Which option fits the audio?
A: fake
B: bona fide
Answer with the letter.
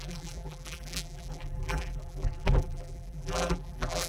A